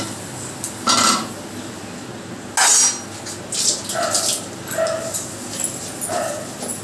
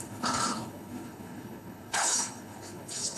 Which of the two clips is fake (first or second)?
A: second